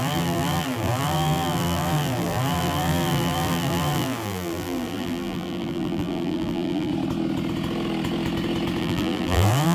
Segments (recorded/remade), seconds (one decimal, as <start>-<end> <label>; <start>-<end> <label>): 0.0-6.9 remade; 6.9-8.8 recorded; 8.8-9.7 remade